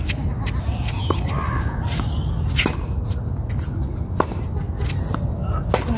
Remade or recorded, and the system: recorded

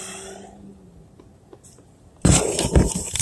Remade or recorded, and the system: recorded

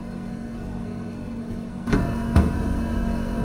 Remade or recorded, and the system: remade, codec, SNAC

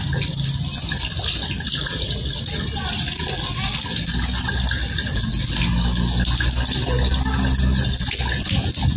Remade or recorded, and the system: recorded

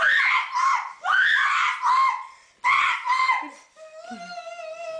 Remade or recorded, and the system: recorded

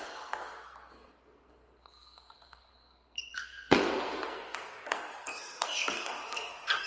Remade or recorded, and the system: remade, codec, SNAC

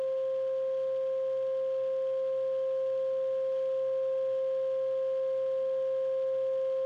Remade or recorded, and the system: recorded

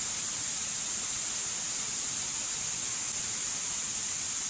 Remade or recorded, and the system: recorded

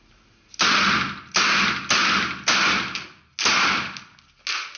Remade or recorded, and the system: recorded